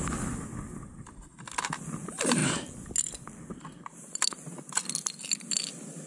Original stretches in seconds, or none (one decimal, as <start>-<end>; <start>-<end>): 0.0-6.1